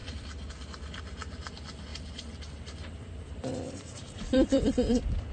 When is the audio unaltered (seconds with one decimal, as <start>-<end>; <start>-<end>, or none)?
0.5-1.9